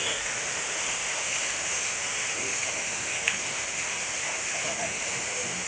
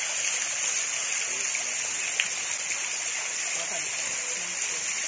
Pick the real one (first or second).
second